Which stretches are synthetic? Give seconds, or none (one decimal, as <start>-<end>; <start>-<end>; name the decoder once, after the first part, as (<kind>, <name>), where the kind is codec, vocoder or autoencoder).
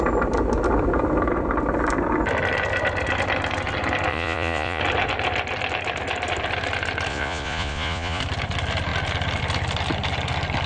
4.1-4.8 (vocoder, Vocos); 7.1-8.2